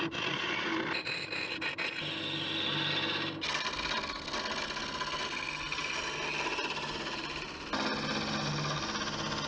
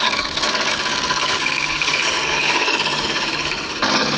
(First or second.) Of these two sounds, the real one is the first